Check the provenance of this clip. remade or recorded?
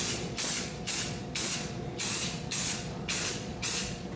remade